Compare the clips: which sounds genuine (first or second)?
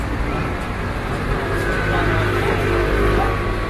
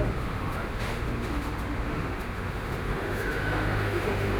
first